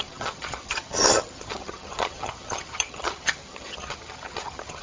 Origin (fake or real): fake